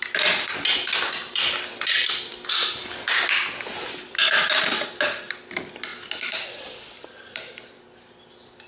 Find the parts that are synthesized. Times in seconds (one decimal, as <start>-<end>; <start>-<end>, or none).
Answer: none